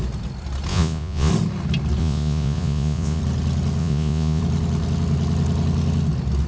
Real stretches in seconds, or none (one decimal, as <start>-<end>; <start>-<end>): 0.0-0.7; 1.3-2.0; 3.2-3.8; 4.4-6.5